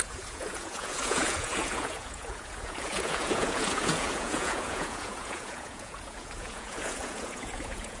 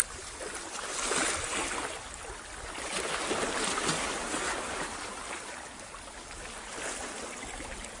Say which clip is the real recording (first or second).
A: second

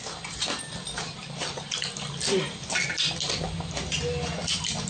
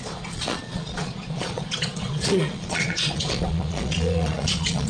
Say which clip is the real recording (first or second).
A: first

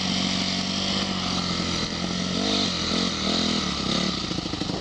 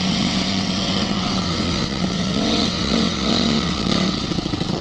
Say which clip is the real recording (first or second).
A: first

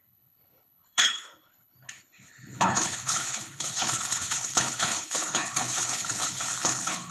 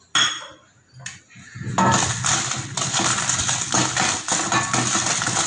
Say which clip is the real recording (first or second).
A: second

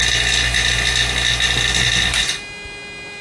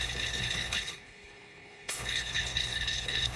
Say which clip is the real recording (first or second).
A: first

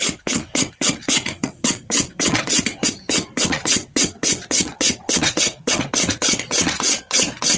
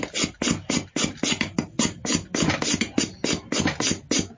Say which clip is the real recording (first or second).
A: second